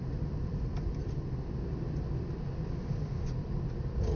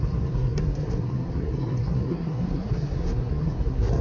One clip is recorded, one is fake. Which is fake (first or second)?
second